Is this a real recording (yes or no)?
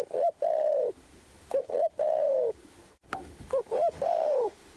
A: no